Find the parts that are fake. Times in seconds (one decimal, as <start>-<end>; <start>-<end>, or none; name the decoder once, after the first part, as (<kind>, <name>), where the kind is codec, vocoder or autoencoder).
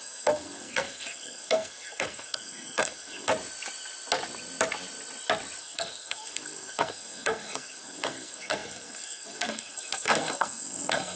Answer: 0.0-3.3 (codec, SNAC); 5.6-11.2